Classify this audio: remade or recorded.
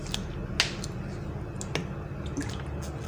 recorded